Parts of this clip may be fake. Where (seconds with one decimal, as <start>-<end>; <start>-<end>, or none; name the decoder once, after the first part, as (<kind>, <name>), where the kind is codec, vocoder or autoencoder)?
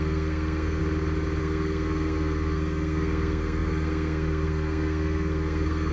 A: 0.0-0.8 (codec, SNAC); 1.4-5.9